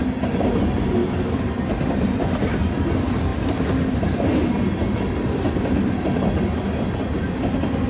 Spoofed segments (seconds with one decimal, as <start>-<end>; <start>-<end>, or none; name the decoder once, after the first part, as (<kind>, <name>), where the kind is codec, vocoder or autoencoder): none